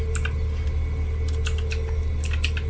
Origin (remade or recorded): recorded